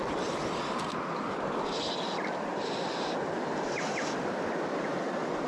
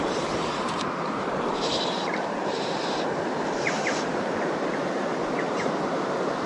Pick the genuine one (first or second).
first